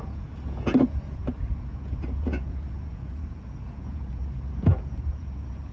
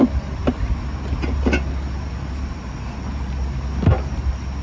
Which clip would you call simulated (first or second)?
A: first